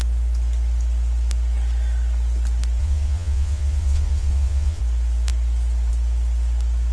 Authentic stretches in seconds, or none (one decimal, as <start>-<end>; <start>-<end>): 0.0-2.8; 4.8-6.9